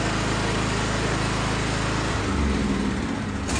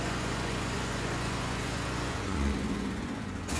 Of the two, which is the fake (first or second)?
second